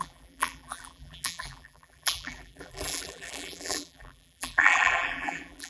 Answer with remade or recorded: remade